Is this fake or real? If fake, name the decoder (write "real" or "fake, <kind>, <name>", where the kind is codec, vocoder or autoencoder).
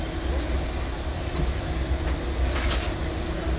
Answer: real